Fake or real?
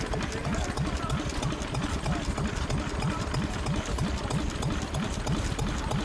real